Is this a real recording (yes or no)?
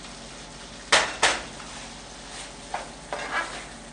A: yes